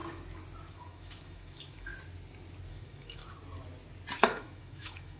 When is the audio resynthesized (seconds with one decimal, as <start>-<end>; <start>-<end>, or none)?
0.7-1.9; 2.7-3.2; 4.2-5.2